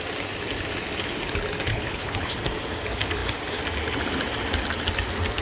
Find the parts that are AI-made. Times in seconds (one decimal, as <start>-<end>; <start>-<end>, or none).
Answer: 1.7-2.3